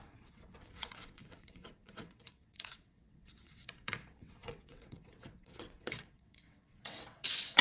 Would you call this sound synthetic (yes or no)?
yes